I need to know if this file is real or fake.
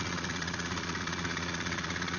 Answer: fake